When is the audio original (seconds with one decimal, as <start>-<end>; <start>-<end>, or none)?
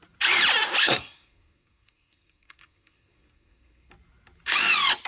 0.0-0.8; 3.9-5.1